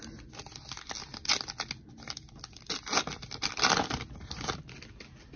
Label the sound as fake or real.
real